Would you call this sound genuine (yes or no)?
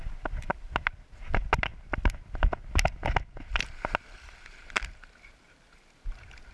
yes